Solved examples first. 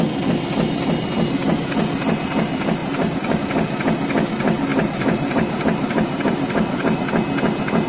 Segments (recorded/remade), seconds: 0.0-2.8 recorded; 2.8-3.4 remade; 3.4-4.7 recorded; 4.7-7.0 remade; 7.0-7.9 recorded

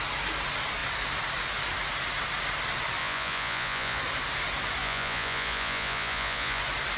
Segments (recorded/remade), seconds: 0.0-3.0 recorded; 3.0-4.0 remade; 4.0-4.8 recorded; 4.8-6.6 remade; 6.6-7.0 recorded

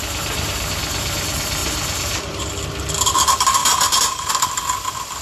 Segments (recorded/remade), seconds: 0.0-1.6 recorded; 1.6-2.4 remade; 2.4-3.6 recorded; 3.6-4.3 remade; 4.3-5.2 recorded

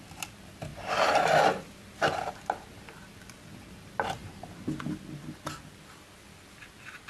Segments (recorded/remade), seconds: 0.0-0.7 recorded; 0.7-3.2 remade; 3.2-7.1 recorded

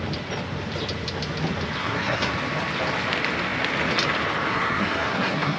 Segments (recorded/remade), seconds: 0.0-1.8 recorded; 1.8-2.3 remade; 2.3-4.5 recorded; 4.5-5.6 remade

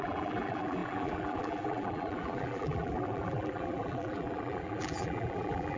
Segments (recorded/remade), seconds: 0.0-5.8 remade